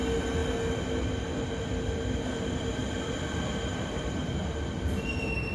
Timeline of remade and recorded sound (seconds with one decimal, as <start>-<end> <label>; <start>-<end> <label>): 0.0-2.8 recorded; 2.8-5.5 remade